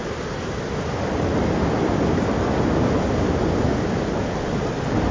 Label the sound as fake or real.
real